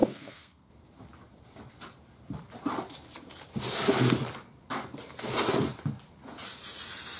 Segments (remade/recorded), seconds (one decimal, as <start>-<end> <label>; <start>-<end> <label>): 0.0-0.7 remade; 0.7-7.2 recorded